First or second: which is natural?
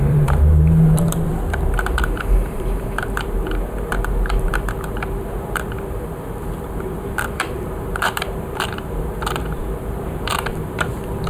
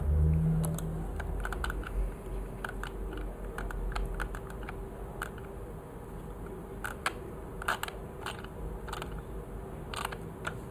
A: second